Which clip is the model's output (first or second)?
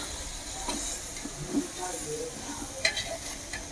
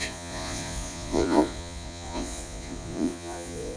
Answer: second